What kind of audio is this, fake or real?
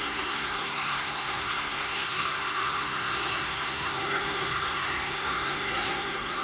fake